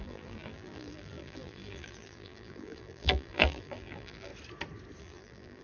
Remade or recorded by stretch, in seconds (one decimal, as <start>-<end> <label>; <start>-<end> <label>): 0.0-4.3 remade; 4.3-5.0 recorded; 5.0-5.6 remade